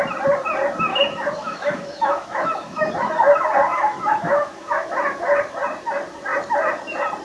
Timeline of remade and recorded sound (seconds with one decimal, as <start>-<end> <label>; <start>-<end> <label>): 0.0-0.9 recorded; 0.9-3.1 remade; 3.1-3.7 recorded; 3.7-5.4 remade; 5.4-7.2 recorded